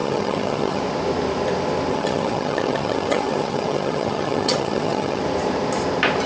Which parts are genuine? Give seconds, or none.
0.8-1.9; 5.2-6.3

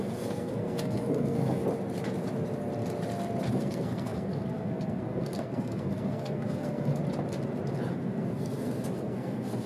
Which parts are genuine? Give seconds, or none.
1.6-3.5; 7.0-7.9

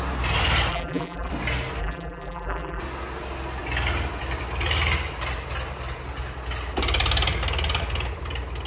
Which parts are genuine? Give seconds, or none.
0.0-0.7; 1.3-1.8; 2.8-8.7